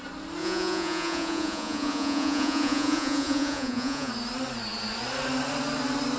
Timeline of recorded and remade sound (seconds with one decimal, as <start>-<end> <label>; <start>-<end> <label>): 0.0-0.4 recorded; 0.4-4.1 remade; 4.1-6.2 recorded